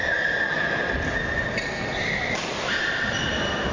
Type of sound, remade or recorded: recorded